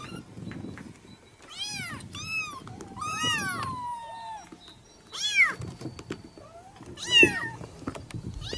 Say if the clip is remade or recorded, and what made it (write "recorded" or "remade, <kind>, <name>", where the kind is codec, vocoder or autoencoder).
recorded